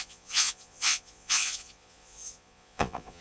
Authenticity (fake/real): fake